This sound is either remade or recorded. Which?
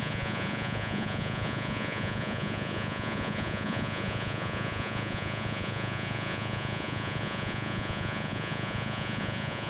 remade